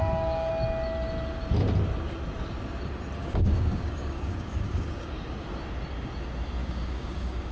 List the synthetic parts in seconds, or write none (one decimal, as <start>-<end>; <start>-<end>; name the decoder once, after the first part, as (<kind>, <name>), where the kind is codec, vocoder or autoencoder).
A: 0.0-0.5 (codec, DAC); 3.2-5.1; 6.6-7.5